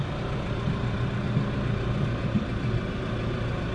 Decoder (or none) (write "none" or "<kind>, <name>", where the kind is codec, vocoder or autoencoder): none